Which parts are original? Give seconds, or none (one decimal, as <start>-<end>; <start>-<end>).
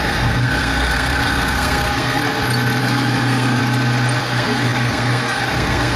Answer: 2.2-2.8; 3.6-4.2